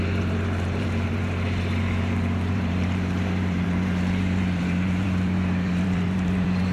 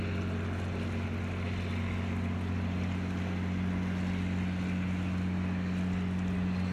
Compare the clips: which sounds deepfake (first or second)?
first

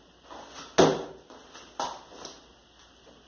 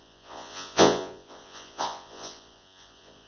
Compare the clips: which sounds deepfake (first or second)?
second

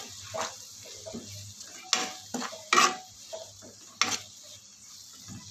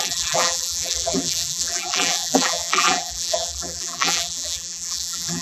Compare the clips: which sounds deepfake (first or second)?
second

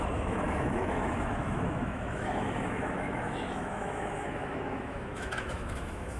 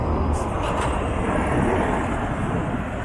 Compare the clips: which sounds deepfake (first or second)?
first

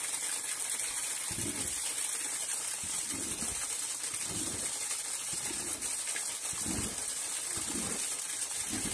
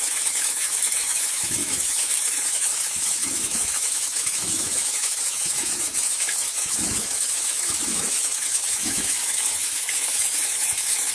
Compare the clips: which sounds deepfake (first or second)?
second